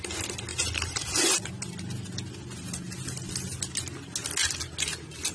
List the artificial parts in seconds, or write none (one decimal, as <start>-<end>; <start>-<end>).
0.5-1.5